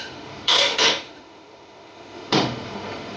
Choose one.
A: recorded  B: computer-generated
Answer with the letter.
B